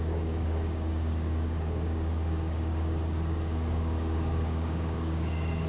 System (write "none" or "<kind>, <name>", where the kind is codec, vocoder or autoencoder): codec, DAC